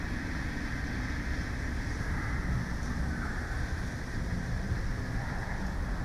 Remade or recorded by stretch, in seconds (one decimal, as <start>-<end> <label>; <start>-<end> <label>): 0.0-3.9 recorded; 3.9-4.8 remade; 4.8-6.0 recorded